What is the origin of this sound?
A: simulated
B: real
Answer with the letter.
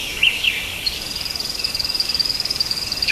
A